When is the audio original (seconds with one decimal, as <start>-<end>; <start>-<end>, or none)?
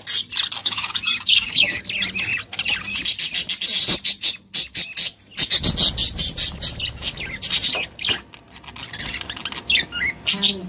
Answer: 0.0-0.6; 1.8-10.7